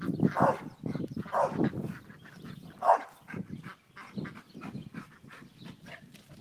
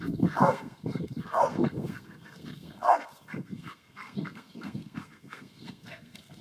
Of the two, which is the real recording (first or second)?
first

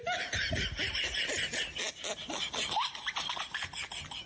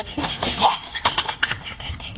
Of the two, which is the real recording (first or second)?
first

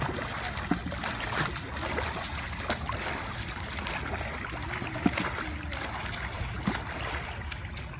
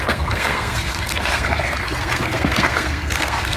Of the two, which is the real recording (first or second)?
first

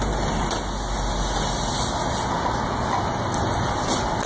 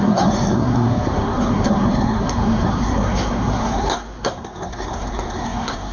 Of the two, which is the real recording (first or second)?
first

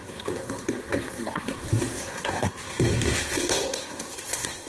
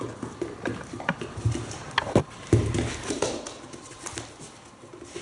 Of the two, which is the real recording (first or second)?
second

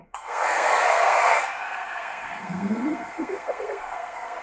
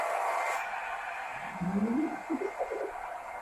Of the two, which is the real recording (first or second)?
second